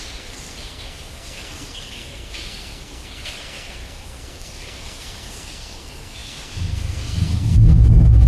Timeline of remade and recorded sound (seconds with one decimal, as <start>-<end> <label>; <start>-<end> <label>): 0.0-8.3 remade

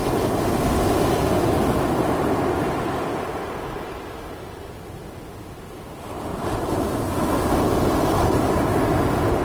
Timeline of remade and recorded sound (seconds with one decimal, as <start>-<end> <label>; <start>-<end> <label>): 0.0-9.4 recorded

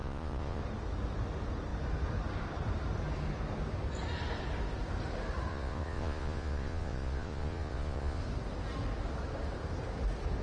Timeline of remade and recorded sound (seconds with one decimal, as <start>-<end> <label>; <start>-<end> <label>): 0.0-0.6 remade; 0.6-5.5 recorded; 5.5-8.2 remade; 8.2-10.4 recorded